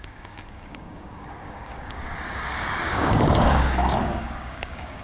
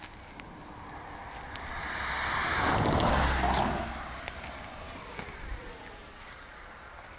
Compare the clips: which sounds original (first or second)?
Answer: second